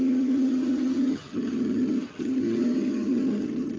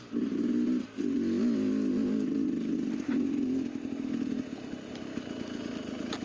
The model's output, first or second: first